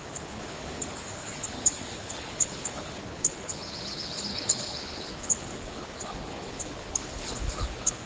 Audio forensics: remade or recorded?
remade